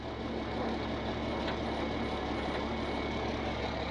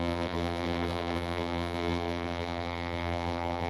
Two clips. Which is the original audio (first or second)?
first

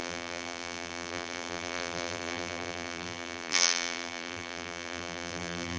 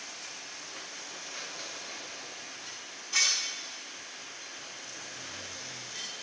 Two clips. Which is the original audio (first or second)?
second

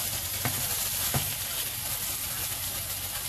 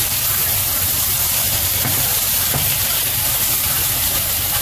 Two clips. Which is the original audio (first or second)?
first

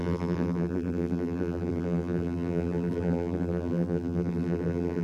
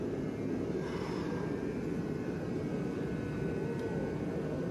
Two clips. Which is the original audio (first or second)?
second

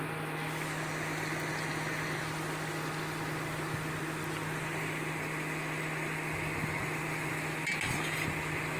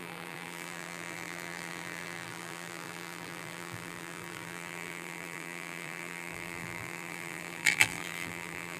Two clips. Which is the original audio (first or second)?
first